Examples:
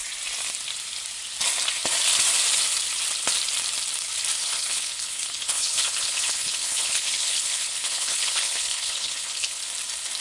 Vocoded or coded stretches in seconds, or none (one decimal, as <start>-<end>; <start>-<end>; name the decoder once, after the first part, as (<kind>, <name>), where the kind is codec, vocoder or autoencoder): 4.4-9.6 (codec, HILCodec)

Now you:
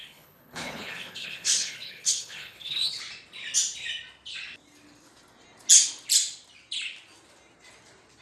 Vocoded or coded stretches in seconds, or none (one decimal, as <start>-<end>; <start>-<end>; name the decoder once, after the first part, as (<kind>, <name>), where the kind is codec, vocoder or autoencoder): 0.0-3.0 (codec, HILCodec)

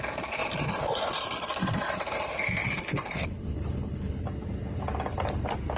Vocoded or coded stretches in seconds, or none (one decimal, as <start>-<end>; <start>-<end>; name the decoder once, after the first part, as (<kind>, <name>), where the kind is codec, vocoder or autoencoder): 2.6-4.2 (codec, HILCodec)

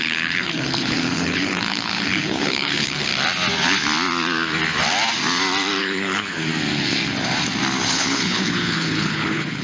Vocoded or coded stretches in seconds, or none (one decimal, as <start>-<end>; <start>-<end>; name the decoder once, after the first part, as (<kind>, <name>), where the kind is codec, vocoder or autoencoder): 0.0-3.1 (codec, HILCodec); 5.8-6.5; 7.8-9.6

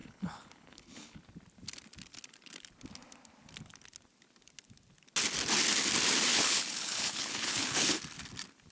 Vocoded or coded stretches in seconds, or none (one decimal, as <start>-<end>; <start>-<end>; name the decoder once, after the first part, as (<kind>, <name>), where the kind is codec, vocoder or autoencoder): 0.0-1.2 (codec, HILCodec); 6.3-8.0

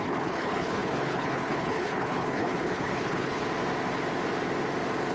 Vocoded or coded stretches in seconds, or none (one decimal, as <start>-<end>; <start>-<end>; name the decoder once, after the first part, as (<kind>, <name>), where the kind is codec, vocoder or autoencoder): 0.0-3.4 (codec, HILCodec)